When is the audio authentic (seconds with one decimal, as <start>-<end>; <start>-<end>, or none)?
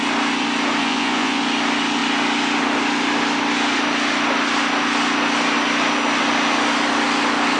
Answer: 0.0-0.8; 1.4-7.6